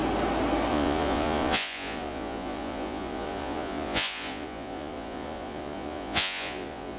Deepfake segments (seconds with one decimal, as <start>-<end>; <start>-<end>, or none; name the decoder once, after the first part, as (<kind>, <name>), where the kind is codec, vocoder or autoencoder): 0.7-7.0 (vocoder, Vocos)